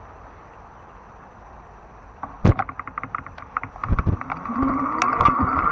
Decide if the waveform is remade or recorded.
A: recorded